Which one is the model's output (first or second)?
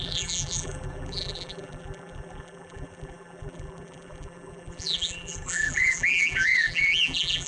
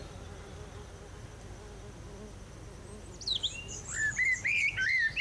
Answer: first